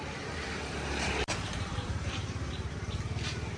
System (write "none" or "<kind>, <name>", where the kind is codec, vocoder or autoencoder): vocoder, BigVGAN v2